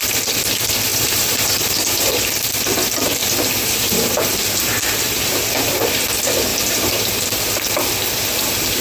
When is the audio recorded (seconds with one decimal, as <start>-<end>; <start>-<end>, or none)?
0.0-0.9; 2.3-3.2; 5.4-6.5; 7.1-8.8